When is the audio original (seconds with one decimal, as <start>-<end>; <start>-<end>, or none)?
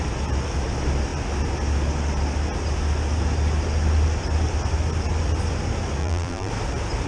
0.0-6.0; 6.5-7.1